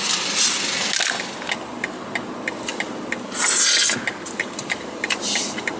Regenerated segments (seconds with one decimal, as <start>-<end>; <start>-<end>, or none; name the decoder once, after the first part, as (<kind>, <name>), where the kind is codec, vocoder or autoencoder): none